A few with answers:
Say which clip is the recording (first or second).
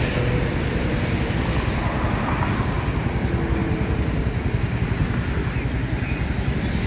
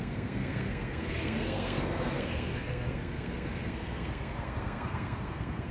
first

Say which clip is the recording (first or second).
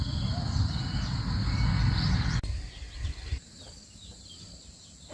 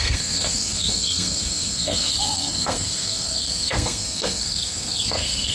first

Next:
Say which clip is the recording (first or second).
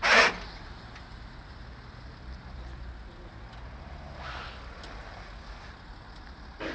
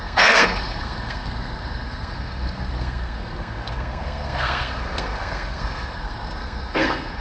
first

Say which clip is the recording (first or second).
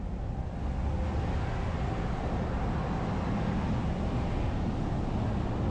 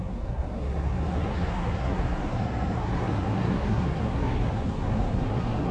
first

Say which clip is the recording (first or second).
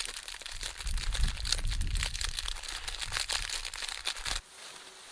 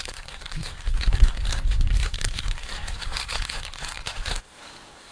first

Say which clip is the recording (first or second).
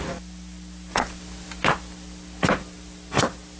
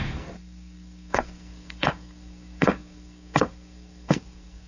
first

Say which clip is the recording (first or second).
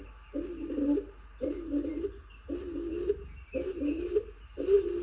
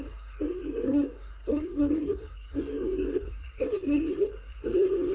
first